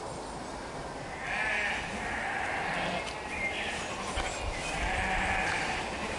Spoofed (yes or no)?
no